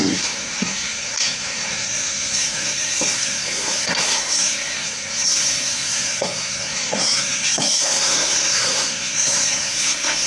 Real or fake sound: fake